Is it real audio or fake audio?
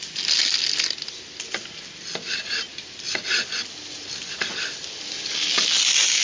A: real